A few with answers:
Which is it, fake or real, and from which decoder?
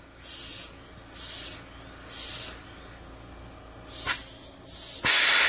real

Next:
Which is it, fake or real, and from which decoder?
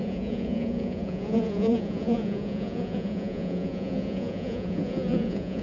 fake, vocoder, Vocos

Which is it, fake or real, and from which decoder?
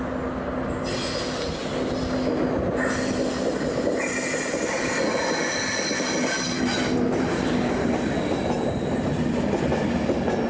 real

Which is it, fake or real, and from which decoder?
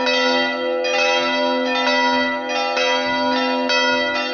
real